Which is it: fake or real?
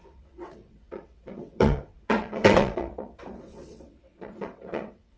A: fake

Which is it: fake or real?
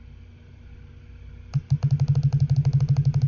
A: real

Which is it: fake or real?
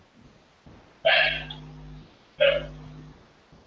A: real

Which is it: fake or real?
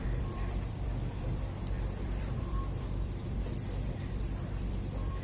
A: fake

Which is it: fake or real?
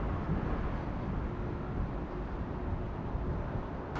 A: real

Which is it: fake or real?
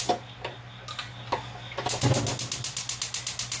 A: real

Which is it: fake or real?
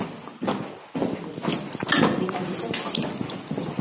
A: real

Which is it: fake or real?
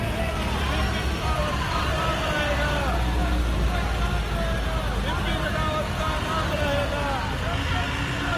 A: real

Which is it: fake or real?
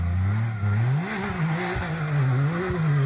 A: real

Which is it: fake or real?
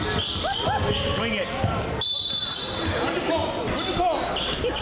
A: real